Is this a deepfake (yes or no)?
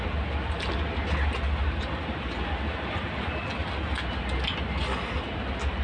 no